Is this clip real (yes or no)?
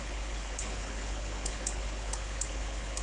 no